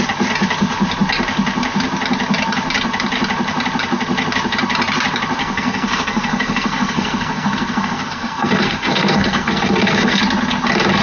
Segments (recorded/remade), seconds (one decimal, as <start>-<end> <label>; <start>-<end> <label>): 0.0-5.4 recorded; 5.4-10.2 remade; 10.2-11.0 recorded